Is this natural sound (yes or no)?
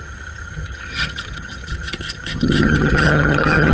no